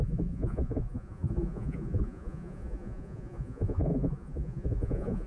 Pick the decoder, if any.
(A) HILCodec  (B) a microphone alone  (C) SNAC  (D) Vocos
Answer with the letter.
D